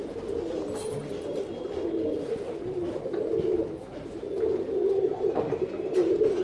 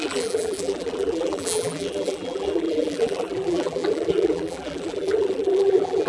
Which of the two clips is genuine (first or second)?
first